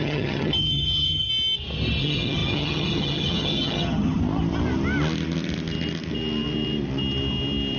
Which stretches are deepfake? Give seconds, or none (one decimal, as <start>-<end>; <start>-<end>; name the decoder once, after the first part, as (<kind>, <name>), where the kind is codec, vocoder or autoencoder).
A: 0.0-1.3 (vocoder, HiFi-GAN); 2.0-4.2